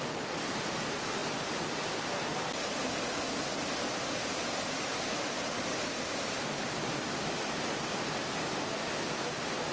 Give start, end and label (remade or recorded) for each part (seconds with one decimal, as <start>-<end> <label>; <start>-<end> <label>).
0.0-9.7 recorded

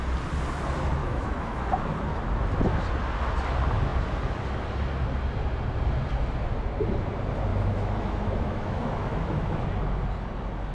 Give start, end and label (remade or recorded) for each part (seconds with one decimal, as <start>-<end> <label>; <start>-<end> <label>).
0.0-1.0 recorded; 1.0-1.7 remade; 1.7-7.5 recorded; 7.5-9.6 remade; 9.6-10.7 recorded

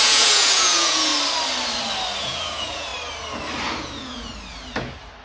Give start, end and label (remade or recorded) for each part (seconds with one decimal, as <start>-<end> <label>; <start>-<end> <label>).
0.0-1.1 remade; 1.1-2.2 recorded; 2.2-2.9 remade; 2.9-3.8 recorded; 3.8-4.3 remade; 4.3-5.2 recorded

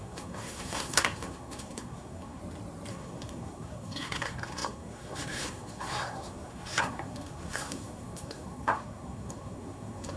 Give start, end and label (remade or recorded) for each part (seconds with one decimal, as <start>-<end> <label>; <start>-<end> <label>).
0.0-2.4 remade; 2.4-2.9 recorded; 2.9-10.2 remade

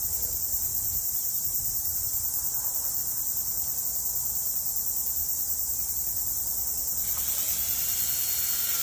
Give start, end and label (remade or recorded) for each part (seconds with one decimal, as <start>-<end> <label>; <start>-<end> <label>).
0.0-0.7 recorded; 0.7-2.0 remade; 2.0-5.2 recorded; 5.2-5.9 remade; 5.9-8.8 recorded

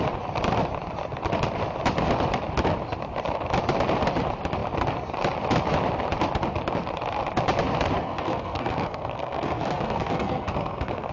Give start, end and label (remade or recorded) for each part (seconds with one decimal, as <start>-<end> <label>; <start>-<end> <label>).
0.0-8.0 recorded; 8.0-11.1 remade

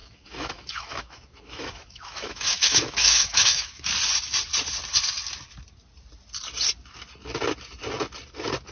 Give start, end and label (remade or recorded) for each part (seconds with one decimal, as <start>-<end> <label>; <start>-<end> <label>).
0.0-3.9 remade; 3.9-8.7 recorded

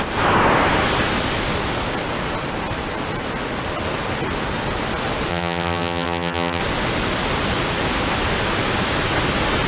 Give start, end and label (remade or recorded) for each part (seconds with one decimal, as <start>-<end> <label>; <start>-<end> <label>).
0.0-5.3 recorded; 5.3-6.6 remade; 6.6-9.7 recorded